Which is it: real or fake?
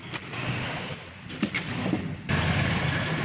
real